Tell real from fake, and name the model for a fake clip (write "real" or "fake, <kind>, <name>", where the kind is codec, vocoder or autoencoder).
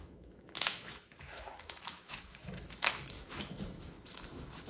fake, autoencoder, DAC-VAE